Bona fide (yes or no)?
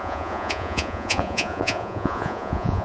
no